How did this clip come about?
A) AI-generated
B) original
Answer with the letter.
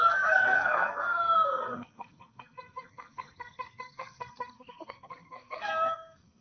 A